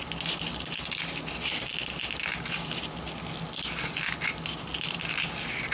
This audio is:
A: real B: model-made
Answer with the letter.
A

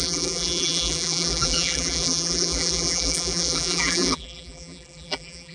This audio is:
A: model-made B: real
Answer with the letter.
A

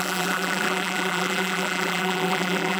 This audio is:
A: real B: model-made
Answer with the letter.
B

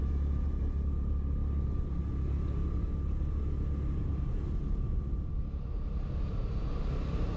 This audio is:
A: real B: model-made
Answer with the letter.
A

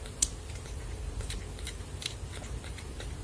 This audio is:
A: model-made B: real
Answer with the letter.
A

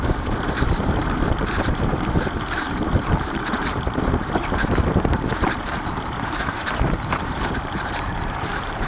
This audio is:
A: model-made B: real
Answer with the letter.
A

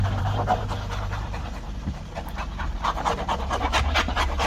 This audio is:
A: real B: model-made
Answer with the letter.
B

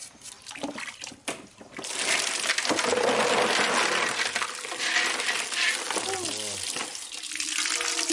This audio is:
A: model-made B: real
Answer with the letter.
B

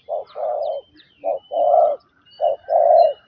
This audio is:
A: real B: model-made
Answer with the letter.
B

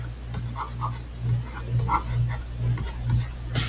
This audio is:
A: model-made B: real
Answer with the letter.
B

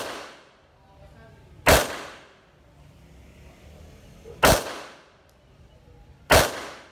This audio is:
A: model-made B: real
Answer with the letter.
B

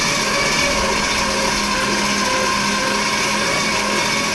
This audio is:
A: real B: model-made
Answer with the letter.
A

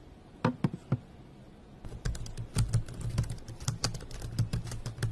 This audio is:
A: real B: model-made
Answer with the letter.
A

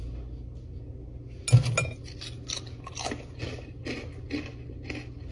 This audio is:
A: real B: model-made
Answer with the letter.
A